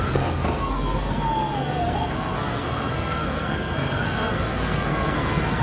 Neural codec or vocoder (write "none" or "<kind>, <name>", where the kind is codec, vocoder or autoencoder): codec, SNAC